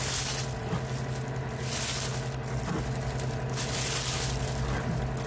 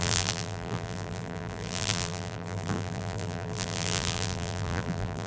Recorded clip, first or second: first